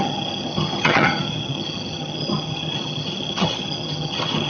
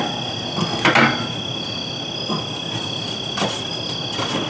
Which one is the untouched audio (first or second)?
second